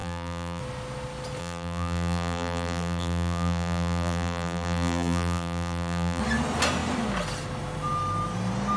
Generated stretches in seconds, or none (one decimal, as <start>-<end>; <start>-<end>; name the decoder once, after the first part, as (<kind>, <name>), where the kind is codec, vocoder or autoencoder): 0.0-0.6 (vocoder, BigVGAN v2); 1.4-6.2